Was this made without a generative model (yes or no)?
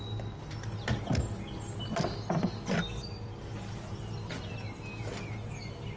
yes